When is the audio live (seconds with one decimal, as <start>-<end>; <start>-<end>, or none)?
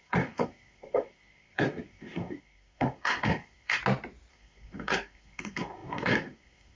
3.8-4.3